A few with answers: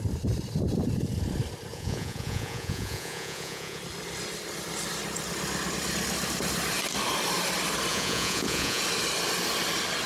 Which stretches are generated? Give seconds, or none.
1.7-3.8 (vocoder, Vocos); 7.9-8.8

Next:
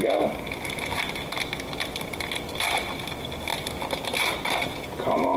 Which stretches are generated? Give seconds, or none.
none

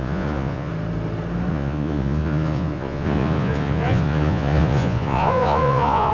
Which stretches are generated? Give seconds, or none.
0.0-0.7 (vocoder, Vocos); 1.5-6.1

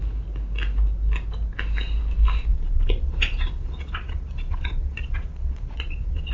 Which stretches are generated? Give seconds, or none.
2.5-6.3 (vocoder, Vocos)

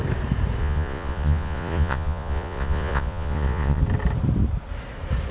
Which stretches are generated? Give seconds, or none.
0.6-3.8 (vocoder, Vocos)

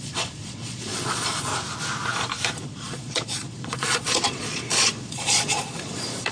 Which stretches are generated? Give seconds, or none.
0.0-1.5 (vocoder, Vocos); 2.5-6.3

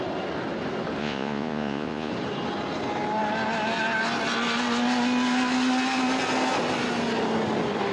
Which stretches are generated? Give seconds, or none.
1.0-2.1 (vocoder, Vocos)

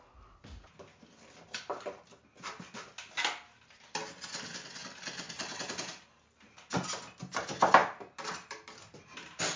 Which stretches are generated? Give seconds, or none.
none